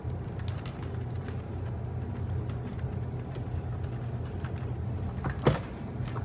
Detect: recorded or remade recorded